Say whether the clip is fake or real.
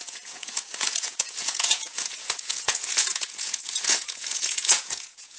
fake